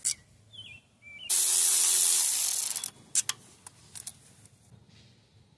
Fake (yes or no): no